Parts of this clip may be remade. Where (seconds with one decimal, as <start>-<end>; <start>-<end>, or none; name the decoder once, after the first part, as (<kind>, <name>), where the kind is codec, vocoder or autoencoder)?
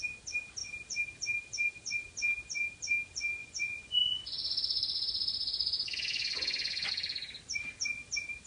3.4-6.9 (vocoder, Vocos)